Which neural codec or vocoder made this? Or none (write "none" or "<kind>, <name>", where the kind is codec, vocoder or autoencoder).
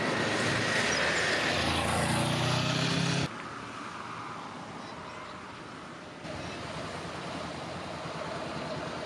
none